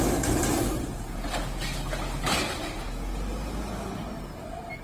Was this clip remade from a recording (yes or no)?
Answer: no